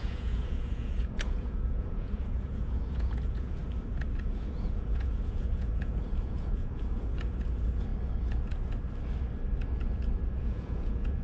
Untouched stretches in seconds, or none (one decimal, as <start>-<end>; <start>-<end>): 3.6-4.2; 7.9-10.3

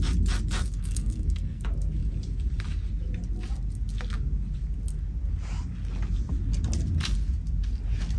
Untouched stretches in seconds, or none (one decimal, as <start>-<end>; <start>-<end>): 0.0-0.6; 1.6-8.2

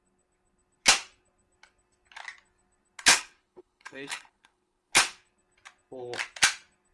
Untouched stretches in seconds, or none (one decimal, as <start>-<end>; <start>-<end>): 0.0-3.1; 4.9-6.9

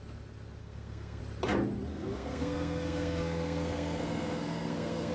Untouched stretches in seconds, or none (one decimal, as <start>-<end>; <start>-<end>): 0.0-0.6; 1.2-1.9